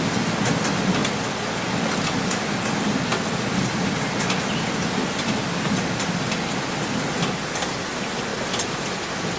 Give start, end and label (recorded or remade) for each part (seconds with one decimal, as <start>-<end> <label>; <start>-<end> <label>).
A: 0.0-9.4 recorded